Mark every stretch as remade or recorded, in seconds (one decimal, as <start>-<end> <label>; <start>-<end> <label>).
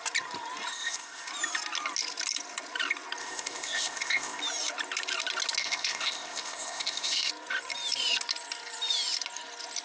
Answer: 0.0-0.7 recorded; 0.7-1.3 remade; 1.3-3.2 recorded; 3.2-4.4 remade; 4.4-5.6 recorded; 5.6-7.3 remade; 7.3-9.8 recorded